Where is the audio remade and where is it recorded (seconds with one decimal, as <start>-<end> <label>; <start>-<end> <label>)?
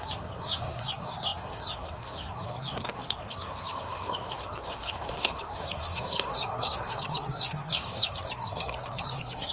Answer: 0.0-9.5 remade